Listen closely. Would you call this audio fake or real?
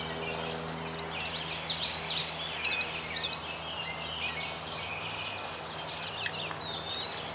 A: real